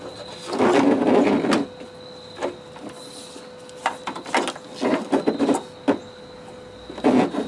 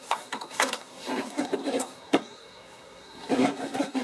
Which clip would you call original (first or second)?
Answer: first